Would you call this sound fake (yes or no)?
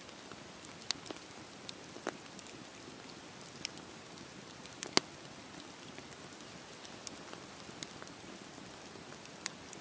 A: no